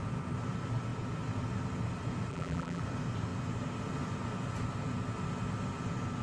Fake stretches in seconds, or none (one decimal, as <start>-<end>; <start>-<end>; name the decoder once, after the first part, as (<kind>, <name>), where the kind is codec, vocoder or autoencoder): 2.3-2.8 (vocoder, BigVGAN v2)